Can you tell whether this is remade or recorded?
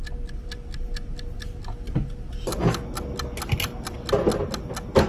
recorded